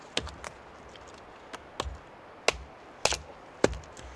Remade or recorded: recorded